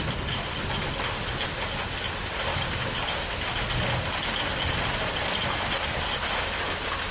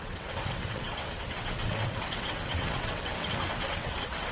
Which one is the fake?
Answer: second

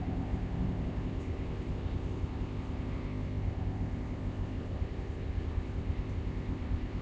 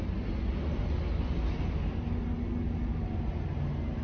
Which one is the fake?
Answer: first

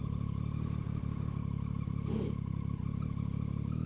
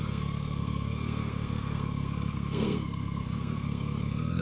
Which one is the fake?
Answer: second